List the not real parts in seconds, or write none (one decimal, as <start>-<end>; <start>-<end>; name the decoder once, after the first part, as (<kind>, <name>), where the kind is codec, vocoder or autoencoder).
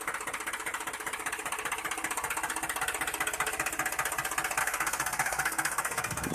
4.6-6.3 (codec, SNAC)